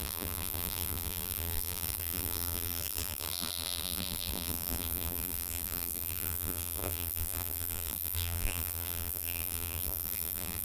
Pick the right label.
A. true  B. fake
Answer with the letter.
B